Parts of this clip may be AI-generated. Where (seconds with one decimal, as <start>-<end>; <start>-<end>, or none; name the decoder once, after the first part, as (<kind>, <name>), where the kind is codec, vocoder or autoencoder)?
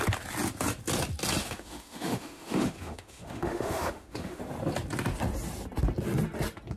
1.4-4.4 (autoencoder, DAC-VAE)